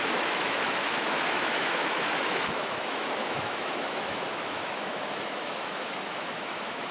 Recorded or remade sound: remade